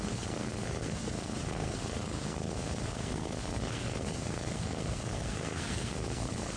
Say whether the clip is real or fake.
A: fake